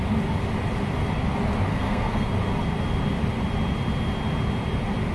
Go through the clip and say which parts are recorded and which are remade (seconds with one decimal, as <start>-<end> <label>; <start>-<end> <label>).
0.0-1.7 recorded; 1.7-2.3 remade; 2.3-5.1 recorded